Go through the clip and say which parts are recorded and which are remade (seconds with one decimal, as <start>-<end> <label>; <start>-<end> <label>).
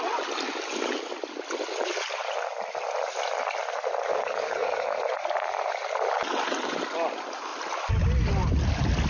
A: 0.0-4.1 recorded; 4.1-5.0 remade; 5.0-9.1 recorded